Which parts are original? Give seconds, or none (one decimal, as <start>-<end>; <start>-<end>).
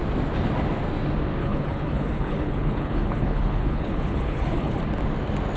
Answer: 0.0-1.4; 4.8-5.6